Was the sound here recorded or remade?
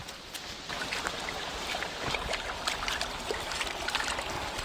recorded